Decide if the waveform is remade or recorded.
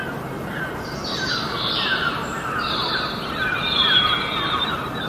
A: remade